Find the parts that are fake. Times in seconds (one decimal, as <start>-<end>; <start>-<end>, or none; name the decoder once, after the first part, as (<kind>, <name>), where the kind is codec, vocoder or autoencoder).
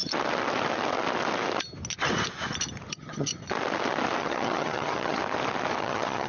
2.9-3.3 (vocoder, HiFi-GAN); 4.2-5.2; 5.8-6.3